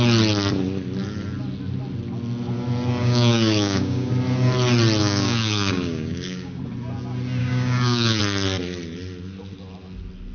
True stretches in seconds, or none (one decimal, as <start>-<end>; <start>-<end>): 0.0-3.0; 4.1-5.0; 6.6-7.4; 8.2-10.3

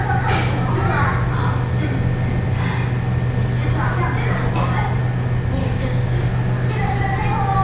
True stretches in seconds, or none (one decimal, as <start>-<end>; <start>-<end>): 0.0-5.6; 6.3-7.6

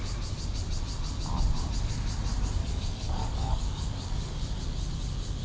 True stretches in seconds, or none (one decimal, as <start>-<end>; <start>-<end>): 0.0-2.6; 4.6-5.4